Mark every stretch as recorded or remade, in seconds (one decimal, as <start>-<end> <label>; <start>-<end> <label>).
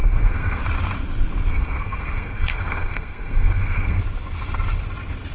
0.0-0.6 remade; 0.6-1.5 recorded; 1.5-4.0 remade; 4.0-5.3 recorded